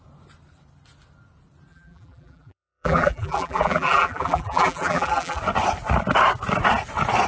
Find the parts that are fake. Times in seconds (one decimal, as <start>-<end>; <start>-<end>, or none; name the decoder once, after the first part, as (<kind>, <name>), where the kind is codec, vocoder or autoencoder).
1.7-5.4 (vocoder, BigVGAN v2)